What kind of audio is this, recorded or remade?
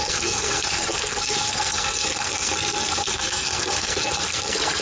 remade